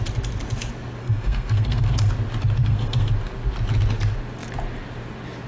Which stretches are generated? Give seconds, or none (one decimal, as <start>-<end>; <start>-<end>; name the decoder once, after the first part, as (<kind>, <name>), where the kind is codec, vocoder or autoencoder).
1.0-2.1 (codec, SNAC); 2.6-3.1